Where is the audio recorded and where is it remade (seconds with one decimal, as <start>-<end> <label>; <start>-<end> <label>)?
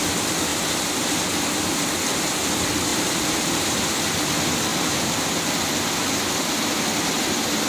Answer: 0.0-2.9 recorded; 2.9-3.9 remade; 3.9-7.7 recorded